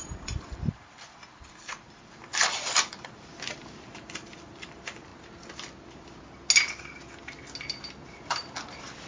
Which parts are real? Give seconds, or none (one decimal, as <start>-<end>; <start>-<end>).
2.3-2.9; 5.1-9.1